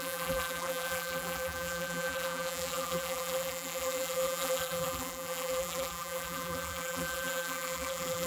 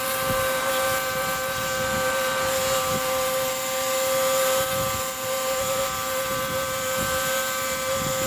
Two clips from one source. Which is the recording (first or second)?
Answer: second